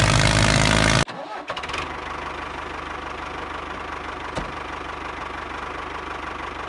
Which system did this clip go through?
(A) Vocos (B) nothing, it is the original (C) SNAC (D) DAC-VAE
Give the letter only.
B